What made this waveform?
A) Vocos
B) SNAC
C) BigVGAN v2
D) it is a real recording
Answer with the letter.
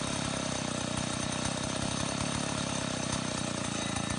D